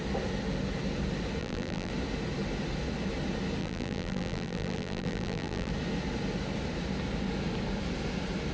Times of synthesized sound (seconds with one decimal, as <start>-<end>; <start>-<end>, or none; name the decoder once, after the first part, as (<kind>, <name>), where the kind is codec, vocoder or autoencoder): 1.4-1.9 (vocoder, BigVGAN v2); 3.6-5.7